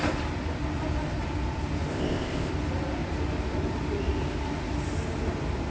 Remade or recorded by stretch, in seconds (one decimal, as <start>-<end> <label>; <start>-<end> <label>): 0.0-1.9 recorded; 1.9-2.5 remade; 2.5-5.7 recorded